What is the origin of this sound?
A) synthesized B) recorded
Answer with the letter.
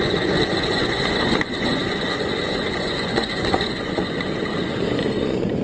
A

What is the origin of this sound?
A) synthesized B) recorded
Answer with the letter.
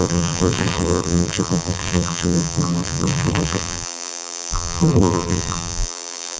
A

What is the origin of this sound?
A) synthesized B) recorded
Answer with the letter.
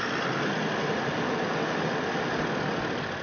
B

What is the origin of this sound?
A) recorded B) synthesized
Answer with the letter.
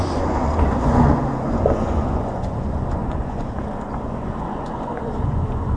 B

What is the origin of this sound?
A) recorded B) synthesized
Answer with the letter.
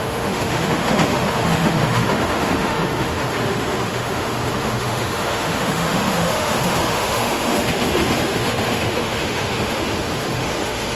B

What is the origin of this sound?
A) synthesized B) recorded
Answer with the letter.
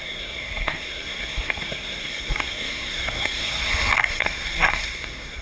A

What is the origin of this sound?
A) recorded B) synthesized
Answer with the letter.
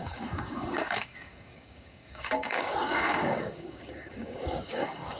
B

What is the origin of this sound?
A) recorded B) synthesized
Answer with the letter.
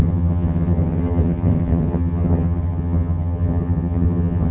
B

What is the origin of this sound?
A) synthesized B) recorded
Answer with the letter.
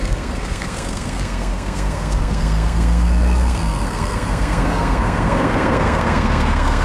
A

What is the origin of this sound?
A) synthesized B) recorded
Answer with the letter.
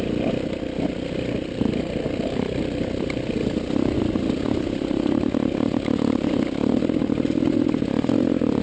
B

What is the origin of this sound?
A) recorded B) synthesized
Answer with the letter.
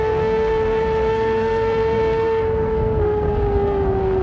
B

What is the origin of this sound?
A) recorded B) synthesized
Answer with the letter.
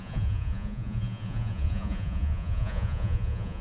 B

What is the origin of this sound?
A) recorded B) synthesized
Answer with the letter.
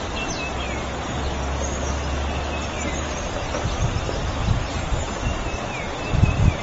A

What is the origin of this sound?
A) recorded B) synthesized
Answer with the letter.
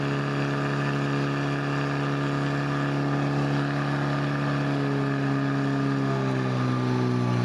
A